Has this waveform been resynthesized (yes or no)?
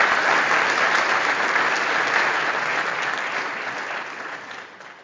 no